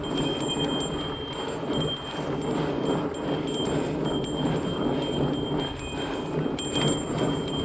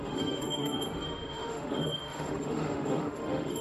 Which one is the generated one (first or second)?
second